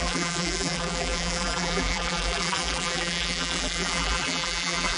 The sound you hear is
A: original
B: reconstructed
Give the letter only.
B